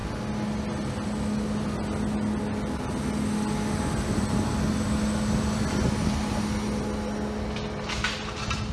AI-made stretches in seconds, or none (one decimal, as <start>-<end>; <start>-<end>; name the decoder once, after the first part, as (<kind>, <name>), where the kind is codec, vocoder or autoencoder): none